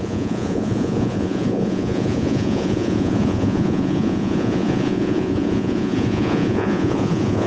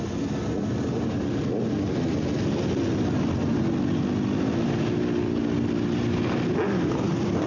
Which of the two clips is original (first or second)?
second